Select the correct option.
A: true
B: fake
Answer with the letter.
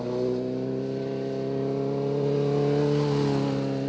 A